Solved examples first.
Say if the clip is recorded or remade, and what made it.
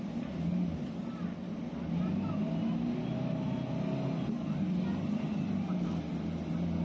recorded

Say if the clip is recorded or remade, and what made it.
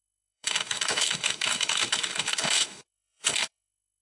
remade, autoencoder, DAC-VAE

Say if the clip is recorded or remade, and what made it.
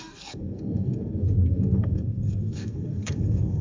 remade, codec, SNAC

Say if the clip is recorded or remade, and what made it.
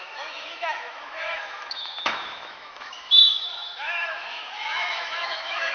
remade, autoencoder, DAC-VAE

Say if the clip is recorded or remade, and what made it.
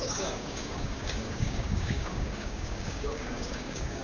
remade, codec, DAC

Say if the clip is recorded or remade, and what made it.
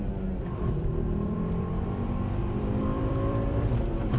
remade, vocoder, BigVGAN v2